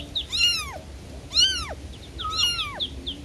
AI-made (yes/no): no